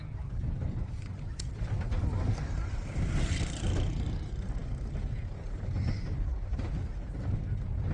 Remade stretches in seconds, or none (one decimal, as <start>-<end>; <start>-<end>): none